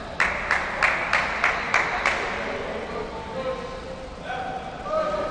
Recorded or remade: recorded